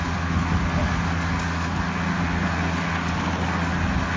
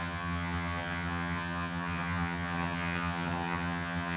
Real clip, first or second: first